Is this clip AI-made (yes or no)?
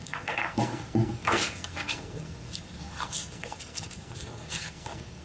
yes